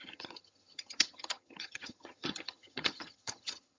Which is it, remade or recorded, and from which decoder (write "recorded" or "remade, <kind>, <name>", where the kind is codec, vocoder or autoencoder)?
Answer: remade, vocoder, HiFi-GAN